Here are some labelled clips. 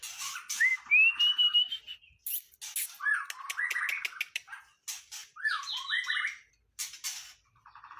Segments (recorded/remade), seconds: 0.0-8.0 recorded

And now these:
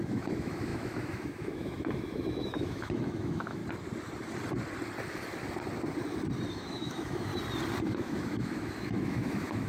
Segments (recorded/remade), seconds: 0.0-3.6 remade; 3.6-6.5 recorded; 6.5-7.3 remade; 7.3-7.8 recorded; 7.8-9.7 remade

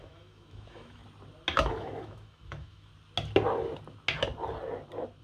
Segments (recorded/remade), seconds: 0.0-1.0 remade; 1.0-1.7 recorded; 1.7-2.9 remade; 2.9-5.2 recorded

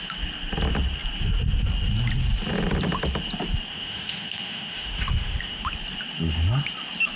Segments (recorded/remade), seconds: 0.0-3.7 recorded; 3.7-5.6 remade; 5.6-7.2 recorded

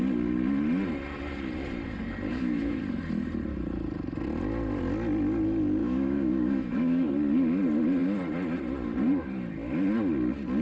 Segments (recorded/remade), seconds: 0.0-2.3 recorded; 2.3-2.8 remade; 2.8-5.8 recorded; 5.8-7.1 remade; 7.1-10.6 recorded